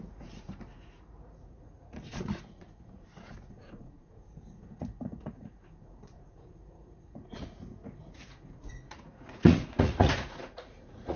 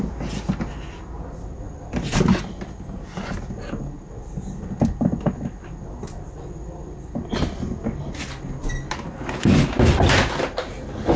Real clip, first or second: second